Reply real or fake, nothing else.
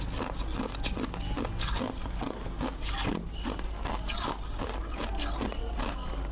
real